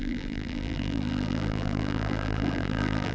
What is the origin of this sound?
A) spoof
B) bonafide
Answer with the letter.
A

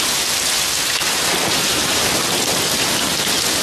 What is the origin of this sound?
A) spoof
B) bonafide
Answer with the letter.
B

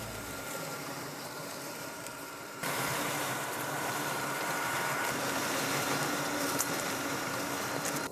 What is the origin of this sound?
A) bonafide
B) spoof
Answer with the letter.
B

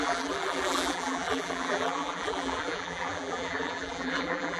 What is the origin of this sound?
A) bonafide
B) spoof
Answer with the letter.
B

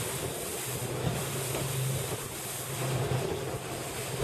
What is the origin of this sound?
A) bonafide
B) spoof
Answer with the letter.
B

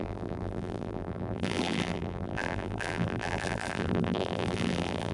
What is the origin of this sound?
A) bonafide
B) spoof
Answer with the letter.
B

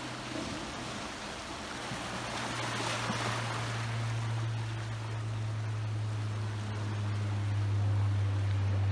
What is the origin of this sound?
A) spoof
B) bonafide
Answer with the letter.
B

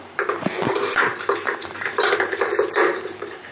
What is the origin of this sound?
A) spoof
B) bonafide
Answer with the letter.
A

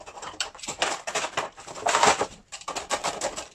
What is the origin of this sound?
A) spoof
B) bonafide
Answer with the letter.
A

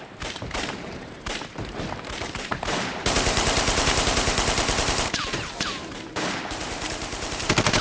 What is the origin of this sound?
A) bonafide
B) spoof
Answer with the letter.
B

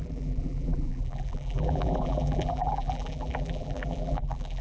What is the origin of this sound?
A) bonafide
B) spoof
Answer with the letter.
B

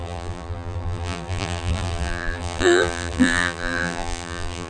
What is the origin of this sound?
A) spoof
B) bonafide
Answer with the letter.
A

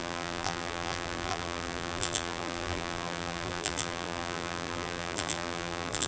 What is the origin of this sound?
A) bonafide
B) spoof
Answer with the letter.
B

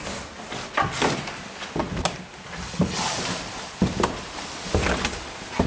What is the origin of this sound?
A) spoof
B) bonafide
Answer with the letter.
B